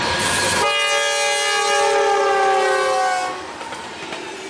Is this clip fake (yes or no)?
no